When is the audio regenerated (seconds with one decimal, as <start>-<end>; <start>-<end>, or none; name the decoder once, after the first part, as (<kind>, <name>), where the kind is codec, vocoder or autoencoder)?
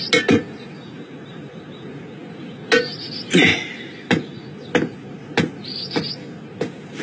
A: 3.5-4.1 (vocoder, BigVGAN v2)